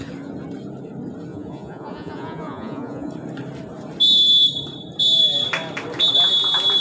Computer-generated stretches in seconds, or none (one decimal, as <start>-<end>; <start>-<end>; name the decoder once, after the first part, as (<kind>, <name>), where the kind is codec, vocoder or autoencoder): 1.3-3.1 (vocoder, Vocos)